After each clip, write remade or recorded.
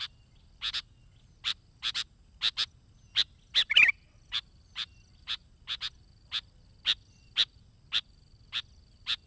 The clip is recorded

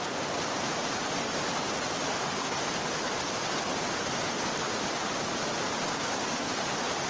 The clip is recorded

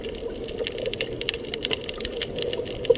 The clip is recorded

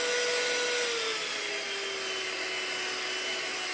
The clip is recorded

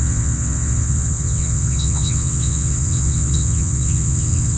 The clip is remade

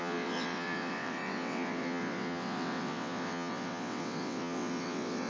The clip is remade